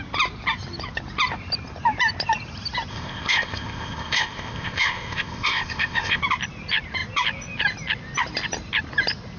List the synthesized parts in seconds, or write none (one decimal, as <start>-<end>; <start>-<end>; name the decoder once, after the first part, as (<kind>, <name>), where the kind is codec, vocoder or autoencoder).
2.9-6.2 (codec, ZipCodec)